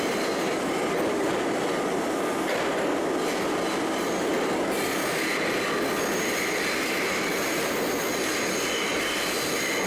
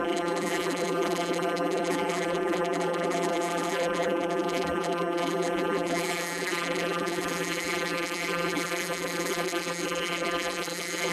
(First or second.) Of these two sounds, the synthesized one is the second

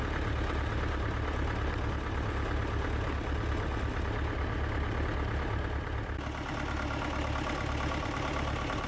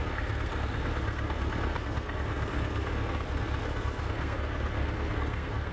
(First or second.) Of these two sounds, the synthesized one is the second